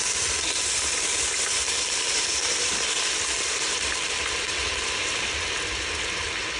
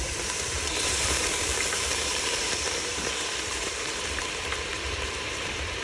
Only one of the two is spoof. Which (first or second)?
second